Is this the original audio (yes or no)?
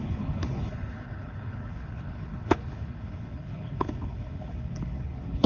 no